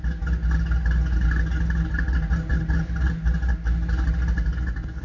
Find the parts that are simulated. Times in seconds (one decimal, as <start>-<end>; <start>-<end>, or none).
none